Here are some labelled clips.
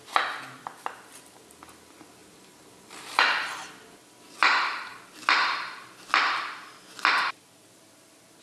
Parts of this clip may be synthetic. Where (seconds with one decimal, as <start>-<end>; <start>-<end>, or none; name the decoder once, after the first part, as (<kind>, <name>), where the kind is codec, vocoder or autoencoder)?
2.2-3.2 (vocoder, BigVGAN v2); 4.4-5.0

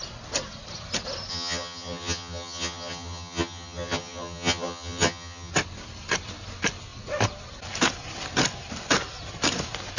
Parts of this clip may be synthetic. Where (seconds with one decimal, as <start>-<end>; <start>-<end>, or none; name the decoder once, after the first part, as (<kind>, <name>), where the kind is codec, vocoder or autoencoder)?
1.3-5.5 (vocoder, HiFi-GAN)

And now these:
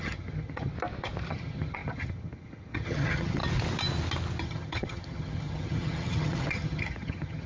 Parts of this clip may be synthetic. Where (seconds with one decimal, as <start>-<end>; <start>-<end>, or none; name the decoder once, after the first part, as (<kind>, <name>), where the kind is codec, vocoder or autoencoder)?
0.0-0.7 (vocoder, HiFi-GAN); 1.3-3.4; 4.4-7.5

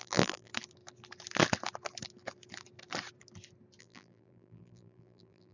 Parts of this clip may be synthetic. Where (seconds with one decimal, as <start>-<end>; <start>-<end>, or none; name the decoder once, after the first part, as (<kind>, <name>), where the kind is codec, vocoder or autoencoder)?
0.0-0.5 (vocoder, BigVGAN v2); 3.8-5.5

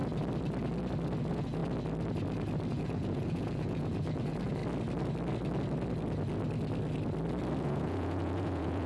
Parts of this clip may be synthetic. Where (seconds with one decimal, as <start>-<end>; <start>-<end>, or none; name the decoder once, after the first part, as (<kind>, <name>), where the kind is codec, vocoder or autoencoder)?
1.2-1.6 (vocoder, Vocos); 2.7-4.6; 7.6-8.9

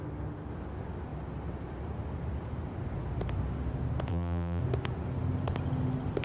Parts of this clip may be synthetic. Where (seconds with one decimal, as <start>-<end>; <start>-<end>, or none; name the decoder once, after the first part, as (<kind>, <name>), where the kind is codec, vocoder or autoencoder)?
4.1-4.6 (vocoder, BigVGAN v2)

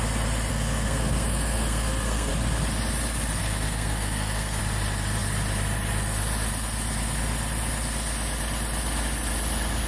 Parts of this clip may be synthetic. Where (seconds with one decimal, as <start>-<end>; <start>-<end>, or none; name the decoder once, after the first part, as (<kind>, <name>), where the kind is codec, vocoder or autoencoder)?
0.5-2.3 (codec, SNAC); 3.4-4.6

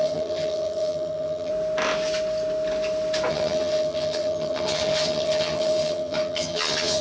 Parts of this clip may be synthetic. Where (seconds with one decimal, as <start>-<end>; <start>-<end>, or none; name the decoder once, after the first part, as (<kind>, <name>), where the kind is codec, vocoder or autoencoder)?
0.0-1.5 (vocoder, HiFi-GAN); 3.3-7.0